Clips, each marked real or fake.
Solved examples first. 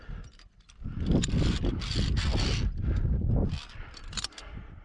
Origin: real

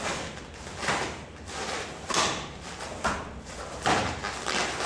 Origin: real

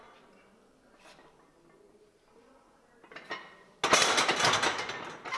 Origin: real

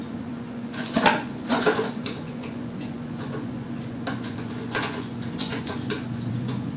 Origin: fake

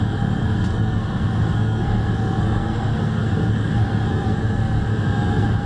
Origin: fake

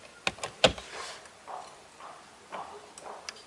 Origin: real